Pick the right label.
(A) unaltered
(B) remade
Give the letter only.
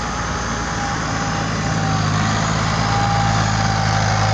A